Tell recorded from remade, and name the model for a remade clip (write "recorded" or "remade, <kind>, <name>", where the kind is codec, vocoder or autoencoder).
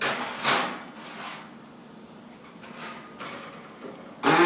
recorded